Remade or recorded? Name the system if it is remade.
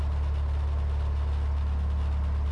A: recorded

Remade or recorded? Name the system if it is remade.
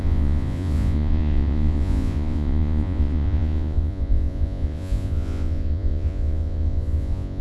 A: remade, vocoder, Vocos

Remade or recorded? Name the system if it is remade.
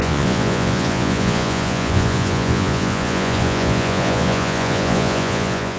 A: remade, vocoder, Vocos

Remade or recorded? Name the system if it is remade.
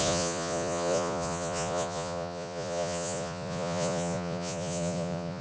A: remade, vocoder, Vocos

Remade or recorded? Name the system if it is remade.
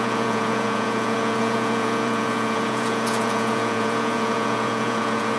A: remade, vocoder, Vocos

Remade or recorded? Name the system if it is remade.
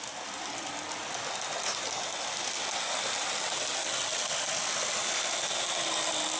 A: recorded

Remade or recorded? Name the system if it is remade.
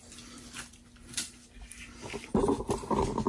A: recorded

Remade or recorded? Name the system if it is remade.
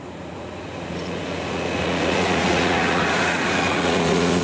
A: remade, vocoder, Vocos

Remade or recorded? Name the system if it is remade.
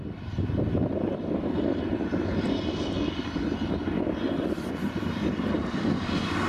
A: recorded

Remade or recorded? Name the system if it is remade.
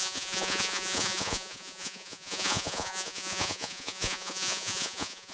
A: remade, vocoder, Vocos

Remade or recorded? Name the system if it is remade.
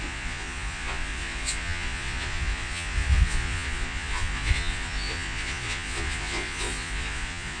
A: remade, vocoder, Vocos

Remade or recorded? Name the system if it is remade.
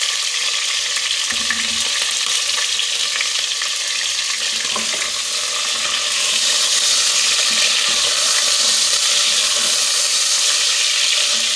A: recorded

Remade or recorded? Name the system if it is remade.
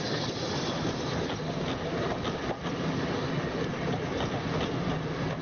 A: recorded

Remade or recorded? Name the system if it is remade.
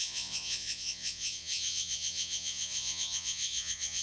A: remade, vocoder, Vocos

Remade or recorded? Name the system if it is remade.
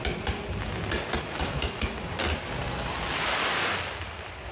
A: recorded